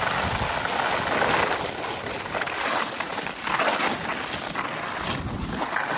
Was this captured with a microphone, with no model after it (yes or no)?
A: yes